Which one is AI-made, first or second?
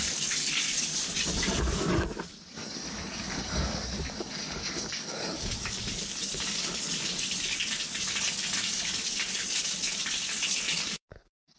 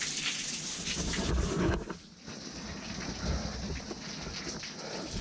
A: first